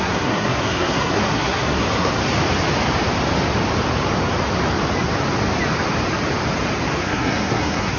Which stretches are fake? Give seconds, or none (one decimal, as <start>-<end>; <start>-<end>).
0.0-2.2; 7.0-8.0